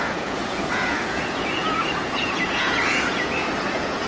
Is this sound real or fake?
fake